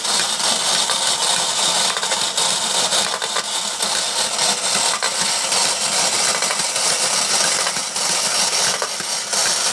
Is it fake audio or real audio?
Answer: real